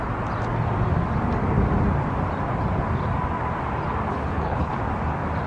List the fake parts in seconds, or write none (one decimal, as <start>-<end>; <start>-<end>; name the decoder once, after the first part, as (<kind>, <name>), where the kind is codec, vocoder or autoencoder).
4.1-4.8 (codec, HILCodec)